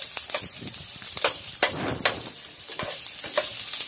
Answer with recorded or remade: recorded